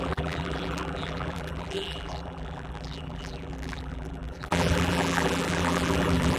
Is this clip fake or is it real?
fake